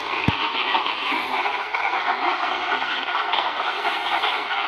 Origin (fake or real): fake